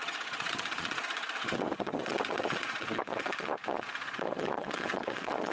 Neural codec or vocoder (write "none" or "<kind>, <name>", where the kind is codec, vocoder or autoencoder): vocoder, Vocos